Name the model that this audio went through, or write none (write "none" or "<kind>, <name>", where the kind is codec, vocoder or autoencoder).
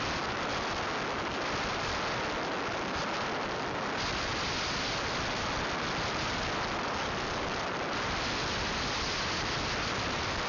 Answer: none